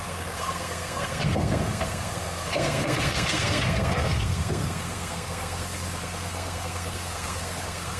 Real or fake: fake